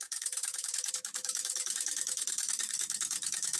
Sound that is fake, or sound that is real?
fake